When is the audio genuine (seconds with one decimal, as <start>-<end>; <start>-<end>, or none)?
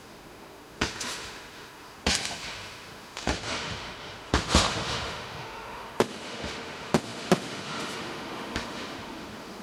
none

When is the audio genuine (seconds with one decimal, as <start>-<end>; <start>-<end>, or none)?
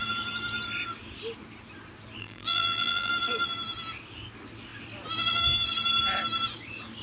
0.0-2.2; 3.1-7.0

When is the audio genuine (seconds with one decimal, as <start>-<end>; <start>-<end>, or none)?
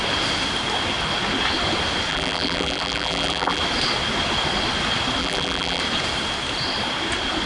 0.0-2.1; 3.6-5.2; 5.8-7.5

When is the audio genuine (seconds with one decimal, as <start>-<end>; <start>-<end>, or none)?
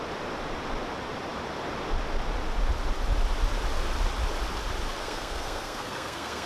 0.0-5.0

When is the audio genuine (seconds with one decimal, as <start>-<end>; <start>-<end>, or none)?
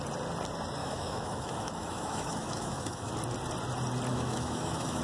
0.0-0.8; 3.1-4.1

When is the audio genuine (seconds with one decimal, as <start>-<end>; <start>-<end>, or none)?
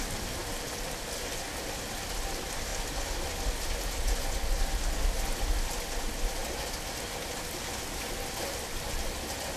0.0-9.6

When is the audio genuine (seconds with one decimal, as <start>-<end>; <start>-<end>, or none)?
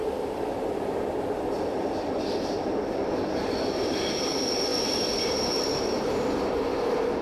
0.0-7.2